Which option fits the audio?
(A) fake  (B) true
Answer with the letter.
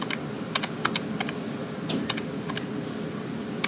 B